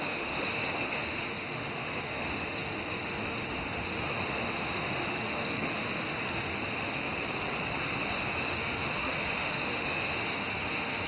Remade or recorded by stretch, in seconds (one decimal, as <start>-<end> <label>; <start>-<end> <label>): 0.0-7.1 remade; 7.1-8.3 recorded; 8.3-11.1 remade